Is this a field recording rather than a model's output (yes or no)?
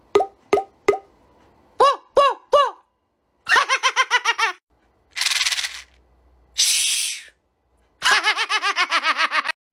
yes